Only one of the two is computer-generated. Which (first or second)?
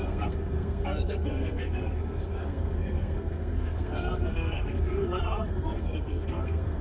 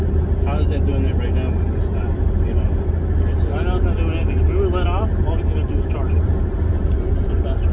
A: first